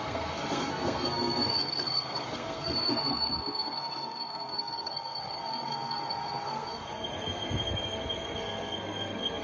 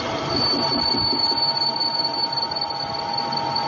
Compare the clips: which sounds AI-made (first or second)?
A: first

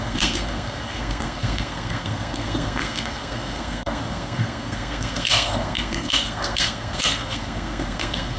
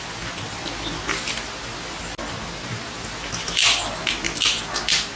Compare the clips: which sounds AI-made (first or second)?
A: first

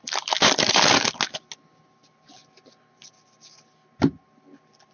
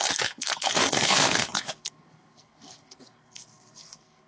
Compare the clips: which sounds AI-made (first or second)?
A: second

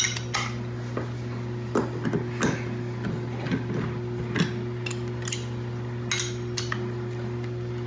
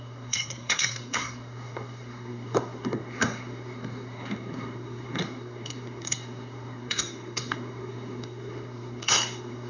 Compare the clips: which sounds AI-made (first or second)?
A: second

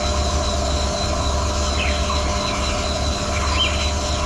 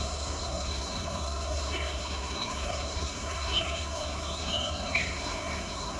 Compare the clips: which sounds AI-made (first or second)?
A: second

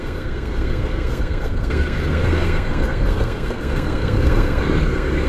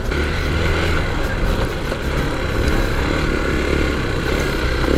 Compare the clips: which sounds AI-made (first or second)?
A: first